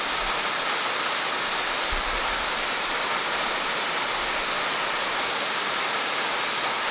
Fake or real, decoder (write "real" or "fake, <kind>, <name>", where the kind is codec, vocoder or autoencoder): real